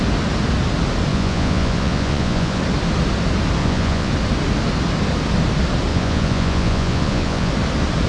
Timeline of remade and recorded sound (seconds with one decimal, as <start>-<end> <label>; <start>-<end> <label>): 0.0-1.1 recorded; 1.1-2.6 remade; 2.6-3.6 recorded; 3.6-4.1 remade; 4.1-5.9 recorded; 5.9-7.5 remade; 7.5-8.1 recorded